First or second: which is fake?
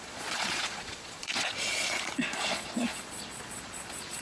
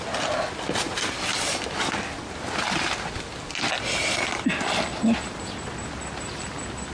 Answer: first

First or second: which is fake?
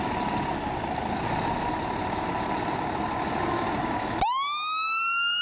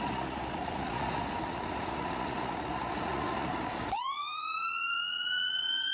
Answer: second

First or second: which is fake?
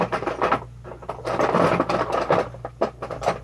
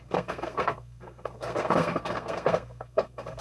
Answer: second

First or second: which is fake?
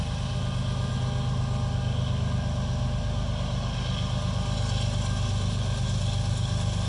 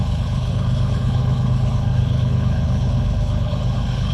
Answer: second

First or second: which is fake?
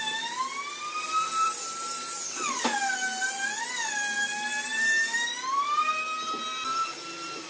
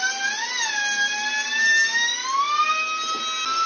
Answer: first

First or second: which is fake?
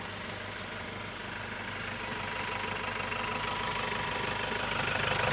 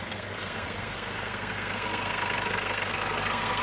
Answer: second